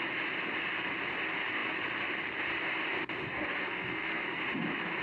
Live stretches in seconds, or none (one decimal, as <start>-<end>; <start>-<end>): 0.0-3.6; 4.4-5.0